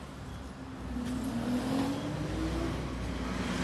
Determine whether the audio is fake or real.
real